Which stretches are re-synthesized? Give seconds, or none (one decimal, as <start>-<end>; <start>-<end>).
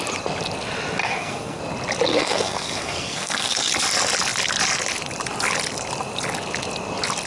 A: 1.0-1.6; 2.1-3.7